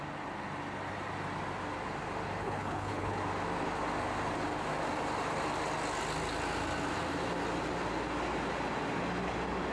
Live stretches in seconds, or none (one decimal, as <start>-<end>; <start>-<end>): 0.0-2.4; 3.2-9.7